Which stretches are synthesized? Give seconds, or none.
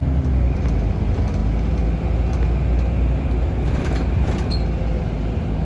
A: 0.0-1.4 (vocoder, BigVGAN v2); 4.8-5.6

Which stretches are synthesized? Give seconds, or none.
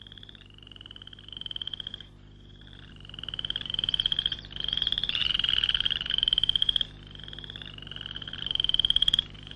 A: 0.0-9.6 (vocoder, BigVGAN v2)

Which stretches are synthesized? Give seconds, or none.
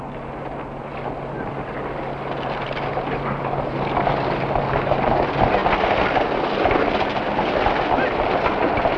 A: none